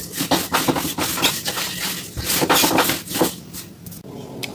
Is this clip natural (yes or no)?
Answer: yes